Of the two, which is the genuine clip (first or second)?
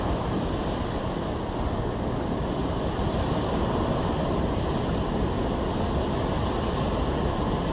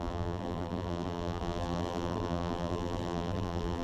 first